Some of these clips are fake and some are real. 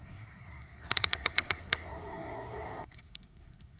fake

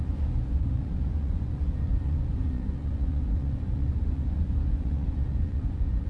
fake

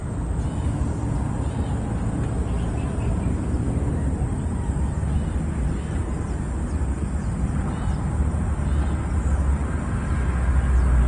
real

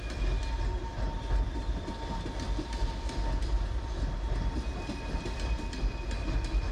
real